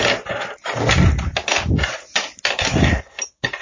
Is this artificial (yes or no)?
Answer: no